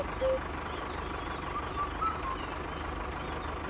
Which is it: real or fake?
real